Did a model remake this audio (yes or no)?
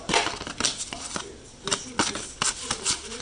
no